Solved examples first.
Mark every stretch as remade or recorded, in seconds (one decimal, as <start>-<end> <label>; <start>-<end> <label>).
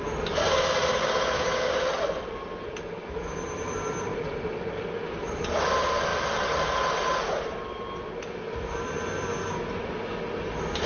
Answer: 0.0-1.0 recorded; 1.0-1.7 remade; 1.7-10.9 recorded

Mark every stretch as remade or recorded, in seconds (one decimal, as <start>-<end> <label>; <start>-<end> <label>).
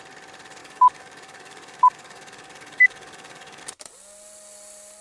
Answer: 0.0-0.6 recorded; 0.6-3.6 remade; 3.6-5.0 recorded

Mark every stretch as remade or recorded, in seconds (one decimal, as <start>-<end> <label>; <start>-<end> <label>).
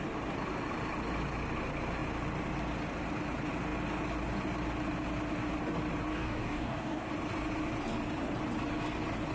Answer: 0.0-6.1 recorded; 6.1-7.1 remade; 7.1-9.3 recorded